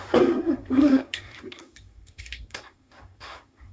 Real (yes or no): no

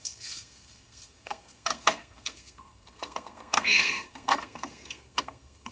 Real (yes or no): no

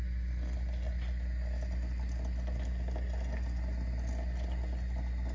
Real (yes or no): yes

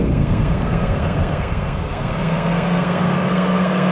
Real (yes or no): no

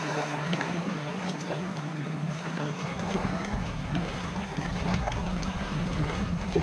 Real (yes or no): no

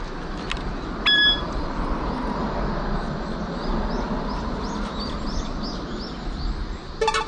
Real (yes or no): yes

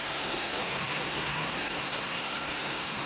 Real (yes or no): no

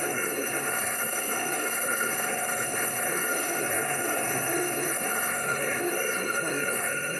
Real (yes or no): no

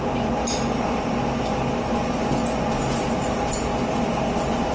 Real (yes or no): yes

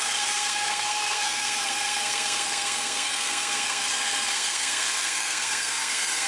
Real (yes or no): no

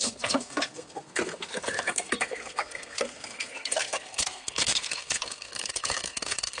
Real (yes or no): no